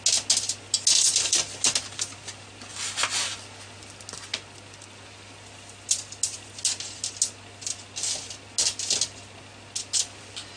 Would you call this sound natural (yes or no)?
yes